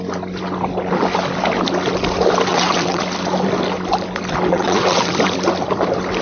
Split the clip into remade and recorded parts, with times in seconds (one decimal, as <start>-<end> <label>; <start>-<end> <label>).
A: 0.0-2.5 recorded; 2.5-3.0 remade; 3.0-4.5 recorded; 4.5-5.1 remade; 5.1-6.2 recorded